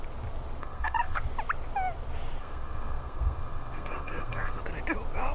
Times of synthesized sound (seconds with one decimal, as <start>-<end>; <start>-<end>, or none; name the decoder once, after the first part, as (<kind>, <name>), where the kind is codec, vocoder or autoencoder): 0.6-1.2 (codec, SNAC); 2.4-4.6